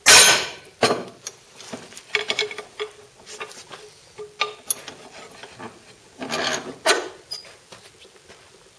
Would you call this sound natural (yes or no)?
yes